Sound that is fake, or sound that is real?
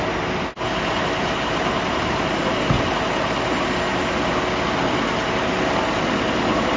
real